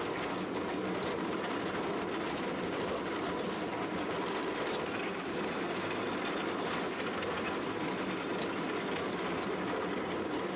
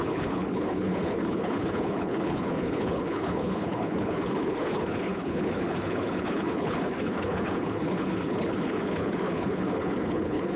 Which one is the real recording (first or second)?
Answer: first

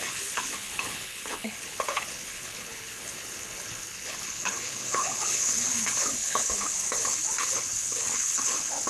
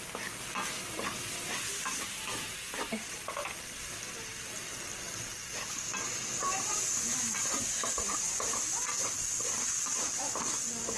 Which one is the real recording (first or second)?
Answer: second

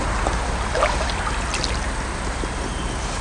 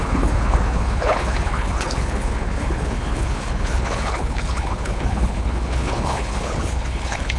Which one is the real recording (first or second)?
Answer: first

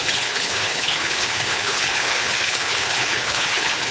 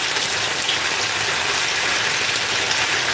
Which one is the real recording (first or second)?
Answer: second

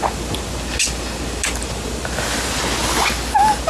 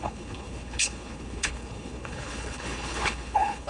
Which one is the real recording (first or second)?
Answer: first